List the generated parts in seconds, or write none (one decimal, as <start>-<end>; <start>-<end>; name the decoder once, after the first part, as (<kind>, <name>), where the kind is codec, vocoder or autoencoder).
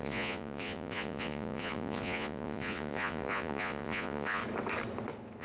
0.0-4.4 (vocoder, Vocos)